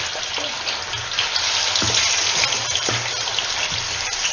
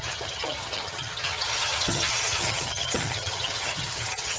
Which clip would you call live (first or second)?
first